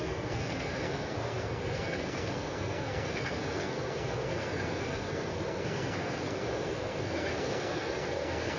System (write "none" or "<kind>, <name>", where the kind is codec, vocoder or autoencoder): codec, SNAC